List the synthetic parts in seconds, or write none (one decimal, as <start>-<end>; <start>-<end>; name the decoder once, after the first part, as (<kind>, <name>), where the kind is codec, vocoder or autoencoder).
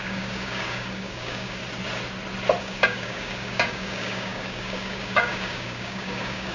0.0-1.6 (codec, DAC); 2.6-6.5